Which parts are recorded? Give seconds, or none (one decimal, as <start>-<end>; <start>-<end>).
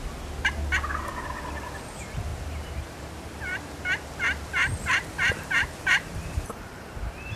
0.0-2.3; 3.4-5.1